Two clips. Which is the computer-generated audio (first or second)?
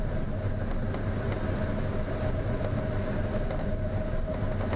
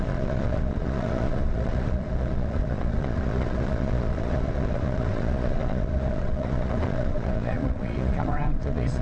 second